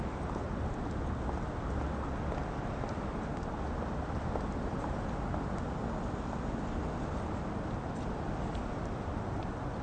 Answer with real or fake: real